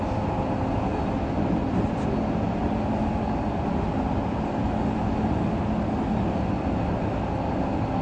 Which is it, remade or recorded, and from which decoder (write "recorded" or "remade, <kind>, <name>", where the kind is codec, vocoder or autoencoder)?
recorded